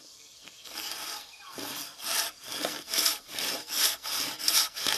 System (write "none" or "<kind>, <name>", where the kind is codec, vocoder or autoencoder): codec, SNAC